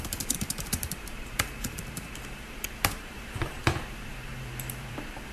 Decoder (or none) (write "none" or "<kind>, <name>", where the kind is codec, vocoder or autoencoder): vocoder, BigVGAN v2